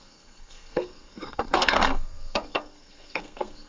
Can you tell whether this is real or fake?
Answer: fake